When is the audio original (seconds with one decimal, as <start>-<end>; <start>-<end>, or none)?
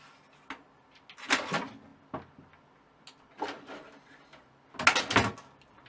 0.0-5.9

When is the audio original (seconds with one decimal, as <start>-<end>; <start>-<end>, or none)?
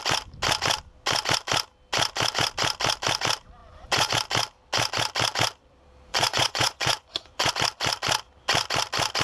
0.0-3.6; 4.1-6.1; 7.5-9.2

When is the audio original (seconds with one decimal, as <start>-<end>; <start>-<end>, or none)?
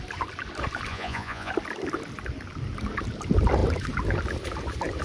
0.0-0.9; 1.5-5.0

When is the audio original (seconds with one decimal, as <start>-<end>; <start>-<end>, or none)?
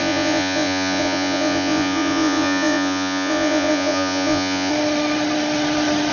4.7-6.1